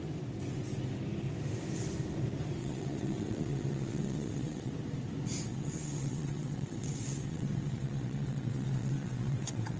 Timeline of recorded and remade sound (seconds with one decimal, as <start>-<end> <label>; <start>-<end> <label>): 0.0-2.6 recorded; 2.6-4.7 remade; 4.7-5.5 recorded; 5.5-9.8 remade